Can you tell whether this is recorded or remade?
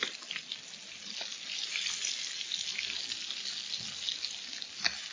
recorded